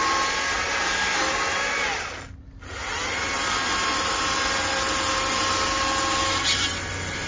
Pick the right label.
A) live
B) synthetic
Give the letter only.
A